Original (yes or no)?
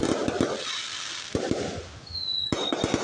yes